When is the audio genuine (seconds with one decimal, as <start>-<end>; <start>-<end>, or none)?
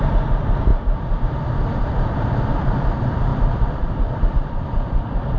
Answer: 0.7-2.4; 3.3-4.2